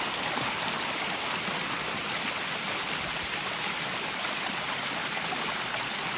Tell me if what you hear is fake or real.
real